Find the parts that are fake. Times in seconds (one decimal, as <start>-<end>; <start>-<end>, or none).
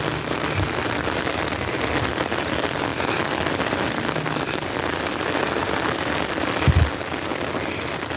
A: none